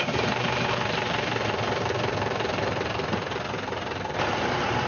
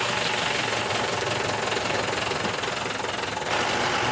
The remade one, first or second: first